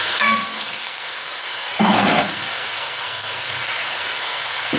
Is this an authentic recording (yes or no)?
no